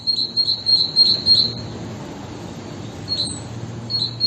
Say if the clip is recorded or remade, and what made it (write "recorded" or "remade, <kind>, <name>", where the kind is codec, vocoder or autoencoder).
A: recorded